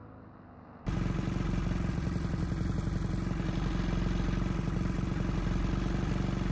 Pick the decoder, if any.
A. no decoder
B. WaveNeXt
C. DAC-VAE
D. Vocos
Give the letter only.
A